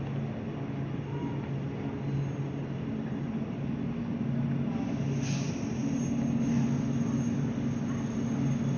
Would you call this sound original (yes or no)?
yes